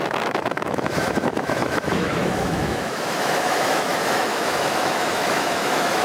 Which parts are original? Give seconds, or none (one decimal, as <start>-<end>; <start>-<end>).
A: none